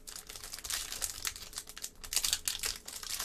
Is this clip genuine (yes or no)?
yes